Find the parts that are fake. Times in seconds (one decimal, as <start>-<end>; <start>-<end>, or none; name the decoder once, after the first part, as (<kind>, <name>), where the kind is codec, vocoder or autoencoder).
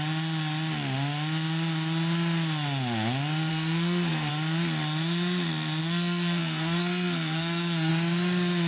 3.5-4.3 (codec, SNAC); 5.8-7.9